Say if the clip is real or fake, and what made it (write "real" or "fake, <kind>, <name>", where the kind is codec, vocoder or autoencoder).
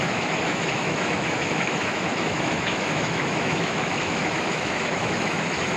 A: fake, autoencoder, DAC-VAE